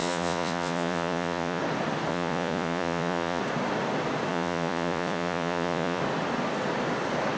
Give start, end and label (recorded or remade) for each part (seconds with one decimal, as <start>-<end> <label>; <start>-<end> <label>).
0.0-1.6 remade; 1.6-2.1 recorded; 2.1-3.4 remade; 3.4-4.3 recorded; 4.3-6.0 remade; 6.0-7.4 recorded